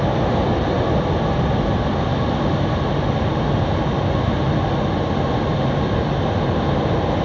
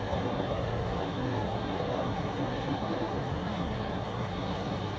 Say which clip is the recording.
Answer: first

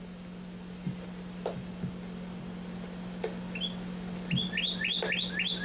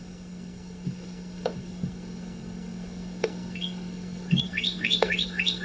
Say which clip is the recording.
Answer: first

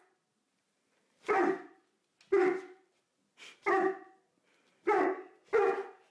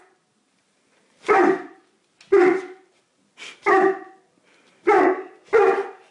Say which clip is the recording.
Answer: first